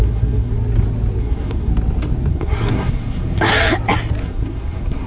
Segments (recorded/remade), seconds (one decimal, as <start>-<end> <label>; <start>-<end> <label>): 0.0-0.5 remade; 0.5-1.2 recorded; 1.2-1.7 remade; 1.7-2.3 recorded; 2.3-3.5 remade; 3.5-4.2 recorded; 4.2-5.1 remade